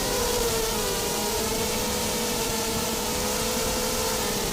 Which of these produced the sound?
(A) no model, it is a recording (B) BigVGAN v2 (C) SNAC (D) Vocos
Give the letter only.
B